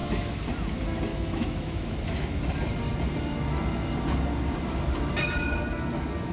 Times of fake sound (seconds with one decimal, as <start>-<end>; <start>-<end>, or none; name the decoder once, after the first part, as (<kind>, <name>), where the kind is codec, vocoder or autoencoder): 0.0-0.5 (autoencoder, DAC-VAE); 1.1-2.4